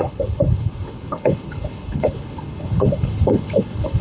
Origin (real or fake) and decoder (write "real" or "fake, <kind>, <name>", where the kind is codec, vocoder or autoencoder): fake, codec, HILCodec